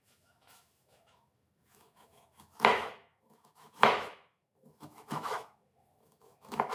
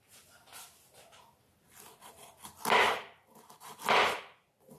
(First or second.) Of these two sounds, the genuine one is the second